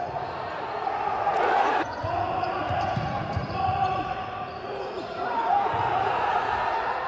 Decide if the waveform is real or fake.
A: fake